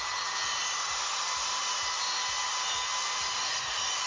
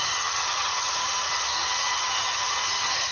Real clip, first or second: first